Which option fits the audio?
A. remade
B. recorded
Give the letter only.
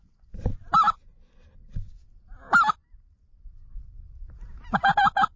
A